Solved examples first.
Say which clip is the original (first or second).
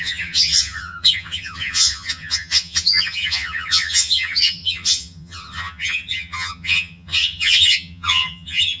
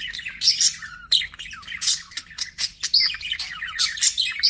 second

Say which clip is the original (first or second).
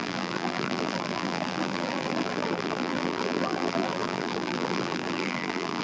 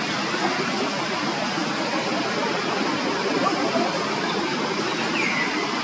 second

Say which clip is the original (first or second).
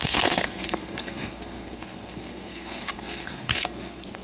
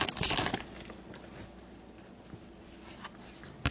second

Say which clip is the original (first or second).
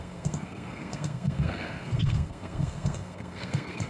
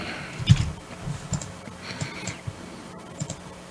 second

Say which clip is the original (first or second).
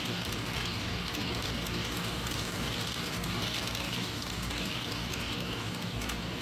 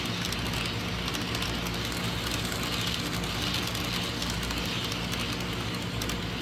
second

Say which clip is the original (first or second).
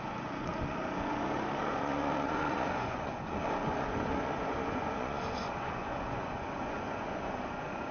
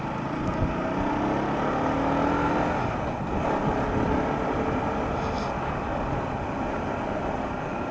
second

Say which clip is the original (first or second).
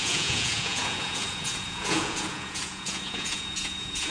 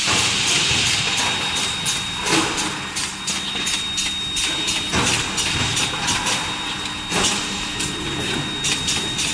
second